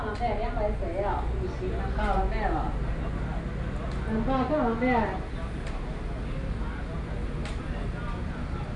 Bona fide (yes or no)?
yes